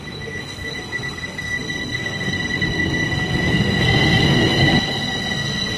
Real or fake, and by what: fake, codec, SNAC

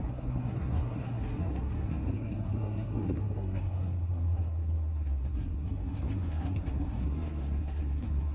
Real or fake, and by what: fake, codec, SNAC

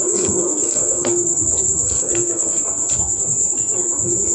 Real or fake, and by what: fake, codec, SNAC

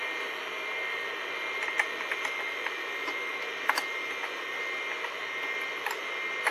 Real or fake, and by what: real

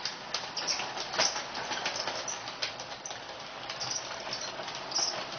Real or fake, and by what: real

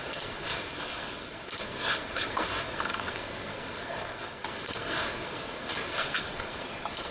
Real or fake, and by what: fake, codec, SNAC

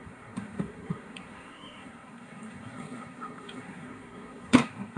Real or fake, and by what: fake, codec, SNAC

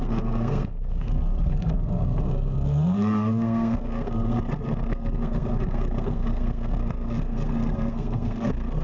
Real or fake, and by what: fake, codec, SNAC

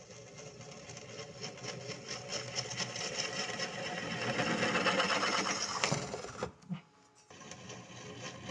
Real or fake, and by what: real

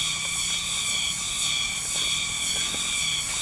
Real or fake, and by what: real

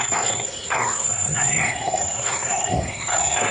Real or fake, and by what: fake, codec, SNAC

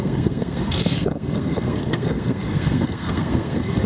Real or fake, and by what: fake, codec, SNAC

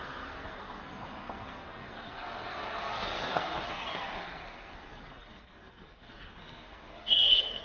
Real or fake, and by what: fake, codec, SNAC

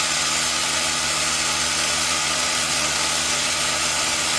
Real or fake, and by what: real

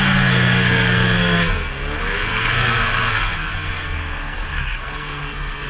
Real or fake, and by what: fake, codec, SNAC